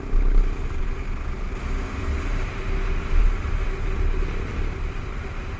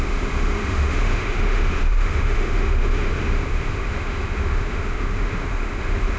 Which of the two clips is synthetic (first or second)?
second